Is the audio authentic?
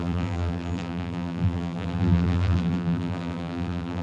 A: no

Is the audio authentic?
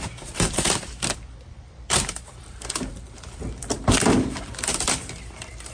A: no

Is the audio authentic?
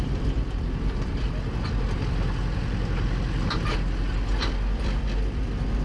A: no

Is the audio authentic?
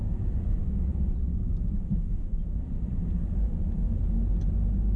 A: no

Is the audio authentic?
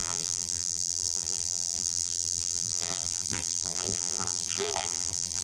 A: no